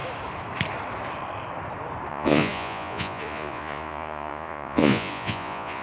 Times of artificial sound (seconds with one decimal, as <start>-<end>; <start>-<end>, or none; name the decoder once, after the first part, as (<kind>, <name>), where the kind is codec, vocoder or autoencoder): 2.1-5.8 (vocoder, Vocos)